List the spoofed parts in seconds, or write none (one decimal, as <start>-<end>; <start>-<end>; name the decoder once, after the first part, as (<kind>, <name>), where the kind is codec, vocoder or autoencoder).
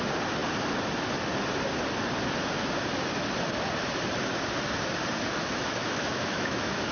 5.3-6.9 (autoencoder, DAC-VAE)